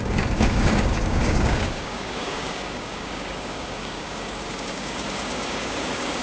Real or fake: fake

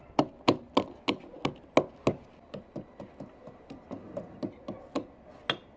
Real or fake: real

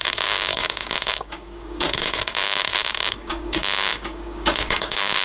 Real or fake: fake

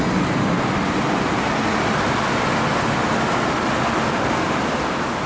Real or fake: real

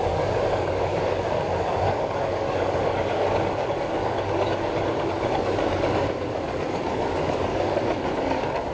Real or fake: fake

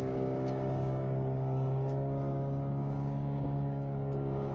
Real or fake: fake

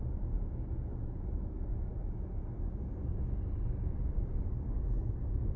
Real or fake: real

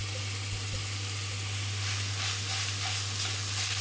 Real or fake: real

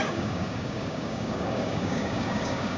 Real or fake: fake